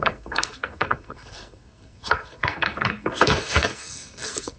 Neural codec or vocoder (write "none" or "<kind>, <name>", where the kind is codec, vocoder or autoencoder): codec, SNAC